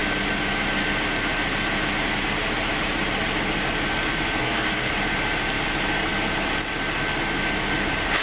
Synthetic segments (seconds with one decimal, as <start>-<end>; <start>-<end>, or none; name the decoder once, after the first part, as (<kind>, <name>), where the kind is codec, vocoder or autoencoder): 4.4-4.9 (codec, SNAC)